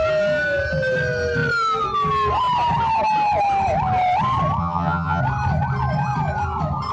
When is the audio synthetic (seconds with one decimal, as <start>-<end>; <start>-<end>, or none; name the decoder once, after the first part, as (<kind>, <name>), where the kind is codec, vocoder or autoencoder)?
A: 4.6-5.2 (vocoder, HiFi-GAN)

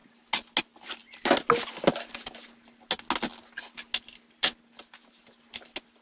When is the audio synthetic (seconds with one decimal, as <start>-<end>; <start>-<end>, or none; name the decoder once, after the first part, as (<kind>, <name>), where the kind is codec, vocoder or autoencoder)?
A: none